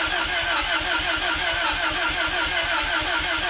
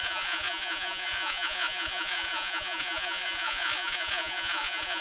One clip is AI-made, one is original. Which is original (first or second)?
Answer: first